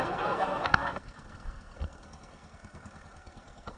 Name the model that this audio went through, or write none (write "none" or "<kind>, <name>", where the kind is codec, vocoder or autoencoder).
codec, SNAC